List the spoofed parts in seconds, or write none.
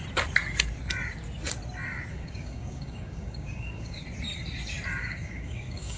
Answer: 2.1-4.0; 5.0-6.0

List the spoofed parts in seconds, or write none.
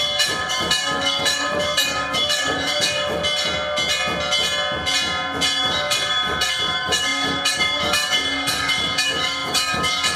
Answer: 0.0-3.2; 5.6-10.2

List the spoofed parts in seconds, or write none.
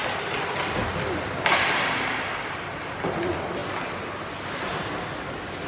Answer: none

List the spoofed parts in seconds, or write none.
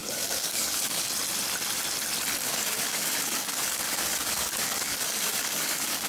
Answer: 0.0-1.1; 2.4-6.1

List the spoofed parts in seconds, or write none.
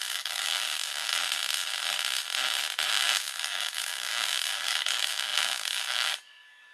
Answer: 0.0-1.1; 2.9-6.7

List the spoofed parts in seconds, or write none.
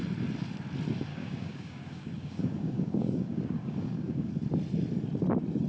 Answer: 1.1-4.3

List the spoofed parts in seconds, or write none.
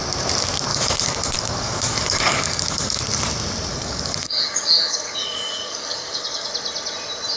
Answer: 0.7-3.0; 3.7-6.5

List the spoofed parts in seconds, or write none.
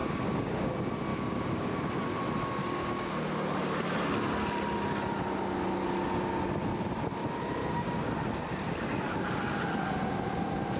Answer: 0.0-0.7; 1.1-1.9; 2.6-3.1